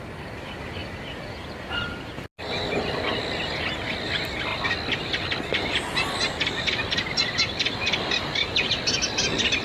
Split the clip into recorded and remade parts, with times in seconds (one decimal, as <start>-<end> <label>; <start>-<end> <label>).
0.0-9.6 recorded